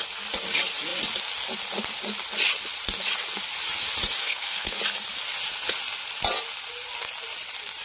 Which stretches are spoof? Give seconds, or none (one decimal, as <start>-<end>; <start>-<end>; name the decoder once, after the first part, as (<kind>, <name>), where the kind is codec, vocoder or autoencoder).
4.2-4.8 (codec, SNAC)